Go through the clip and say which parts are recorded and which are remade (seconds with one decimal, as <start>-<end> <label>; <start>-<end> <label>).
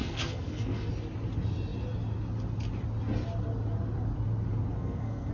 0.0-0.9 remade; 0.9-4.7 recorded; 4.7-5.3 remade